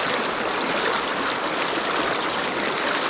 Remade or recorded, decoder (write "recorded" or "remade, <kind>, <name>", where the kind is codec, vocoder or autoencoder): recorded